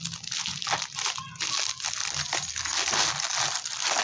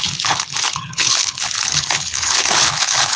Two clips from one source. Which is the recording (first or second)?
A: first